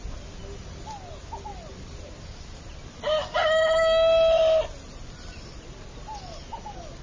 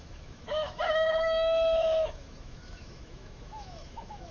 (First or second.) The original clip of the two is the first